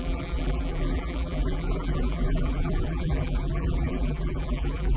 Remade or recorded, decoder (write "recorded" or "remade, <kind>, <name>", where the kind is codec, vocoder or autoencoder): remade, vocoder, BigVGAN v2